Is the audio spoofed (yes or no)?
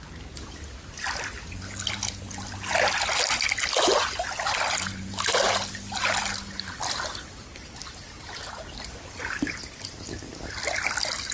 no